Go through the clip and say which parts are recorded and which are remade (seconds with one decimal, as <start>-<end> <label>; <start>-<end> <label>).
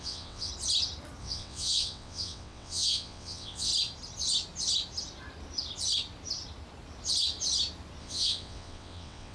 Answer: 0.0-0.5 remade; 0.5-1.2 recorded; 1.2-3.7 remade; 3.7-8.0 recorded; 8.0-9.3 remade